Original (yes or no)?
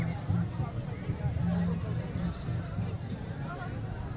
yes